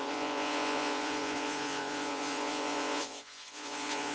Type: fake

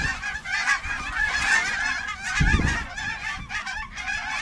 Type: fake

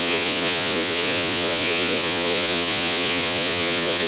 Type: fake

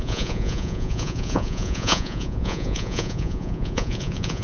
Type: fake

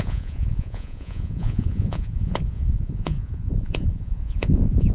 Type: fake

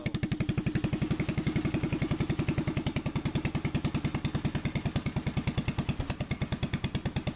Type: real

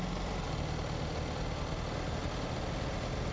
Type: real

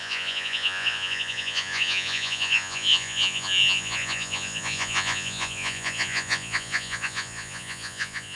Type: fake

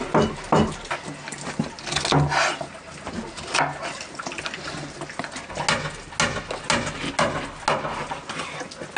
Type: real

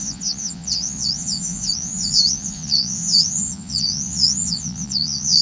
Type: fake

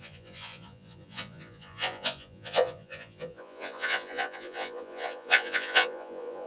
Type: fake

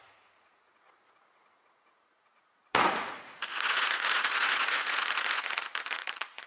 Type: fake